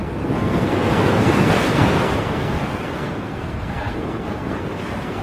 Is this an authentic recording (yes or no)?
no